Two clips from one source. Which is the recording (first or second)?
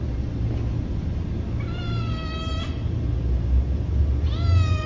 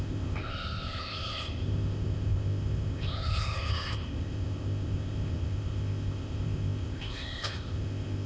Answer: first